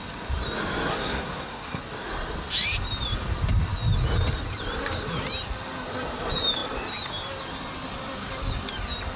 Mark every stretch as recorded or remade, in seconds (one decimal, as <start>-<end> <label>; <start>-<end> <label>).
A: 0.0-0.9 recorded; 0.9-1.8 remade; 1.8-9.2 recorded